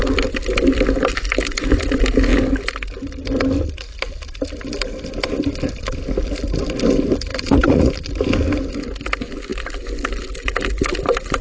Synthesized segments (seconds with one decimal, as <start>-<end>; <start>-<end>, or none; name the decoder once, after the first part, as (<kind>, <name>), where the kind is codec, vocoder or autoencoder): 7.3-7.9 (vocoder, Vocos)